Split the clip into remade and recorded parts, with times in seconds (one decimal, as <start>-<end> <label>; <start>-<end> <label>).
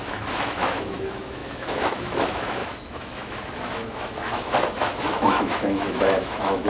0.0-6.7 remade